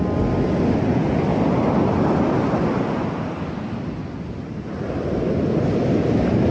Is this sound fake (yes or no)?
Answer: no